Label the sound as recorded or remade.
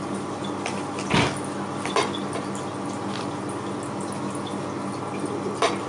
recorded